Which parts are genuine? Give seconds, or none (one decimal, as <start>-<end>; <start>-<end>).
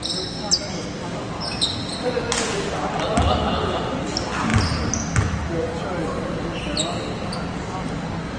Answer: 0.0-8.4